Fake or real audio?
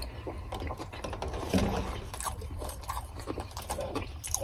fake